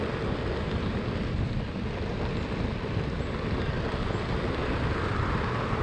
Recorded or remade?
recorded